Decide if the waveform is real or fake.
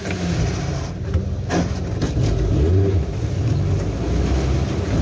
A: real